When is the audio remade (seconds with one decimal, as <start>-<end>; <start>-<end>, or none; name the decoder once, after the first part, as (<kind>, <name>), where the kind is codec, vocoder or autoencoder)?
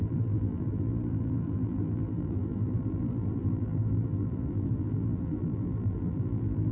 0.0-6.7 (vocoder, BigVGAN v2)